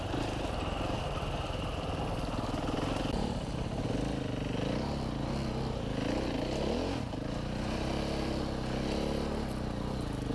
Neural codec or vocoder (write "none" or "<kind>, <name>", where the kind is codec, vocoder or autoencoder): none